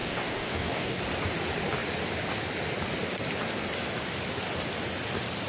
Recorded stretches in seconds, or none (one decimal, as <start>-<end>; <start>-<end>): 1.0-5.5